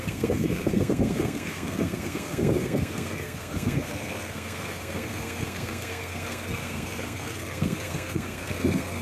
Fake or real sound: fake